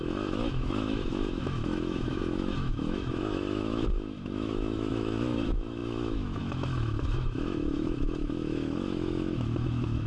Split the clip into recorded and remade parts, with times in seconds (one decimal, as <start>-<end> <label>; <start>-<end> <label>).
0.0-10.1 remade